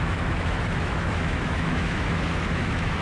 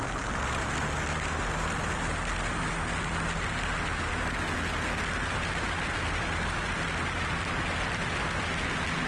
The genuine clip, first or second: second